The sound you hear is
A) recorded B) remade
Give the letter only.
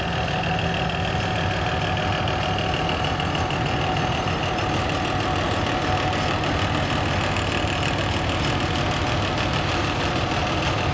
A